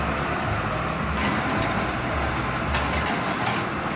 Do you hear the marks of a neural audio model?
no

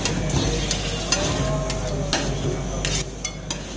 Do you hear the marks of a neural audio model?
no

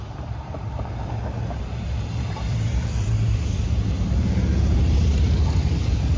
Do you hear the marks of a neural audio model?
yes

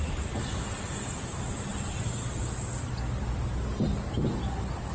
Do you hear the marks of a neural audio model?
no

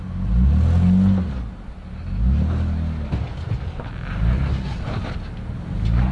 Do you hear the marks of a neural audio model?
no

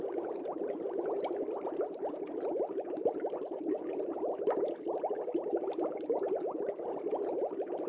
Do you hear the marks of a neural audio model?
no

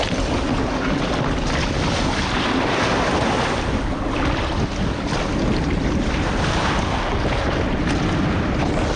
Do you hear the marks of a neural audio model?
no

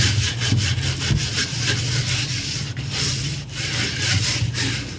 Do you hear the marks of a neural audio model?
no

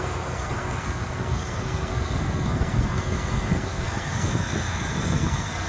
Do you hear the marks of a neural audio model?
yes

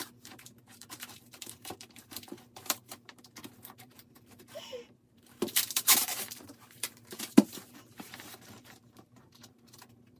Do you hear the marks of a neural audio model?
yes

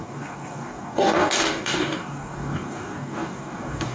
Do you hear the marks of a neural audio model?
yes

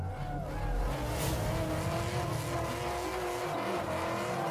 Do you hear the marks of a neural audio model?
no